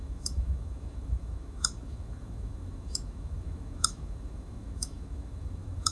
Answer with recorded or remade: remade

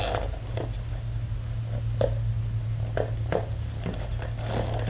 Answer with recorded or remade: recorded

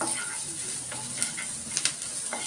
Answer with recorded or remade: recorded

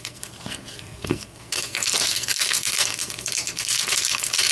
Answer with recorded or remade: remade